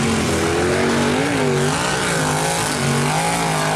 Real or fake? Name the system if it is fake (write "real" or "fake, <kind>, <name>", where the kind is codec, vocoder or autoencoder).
real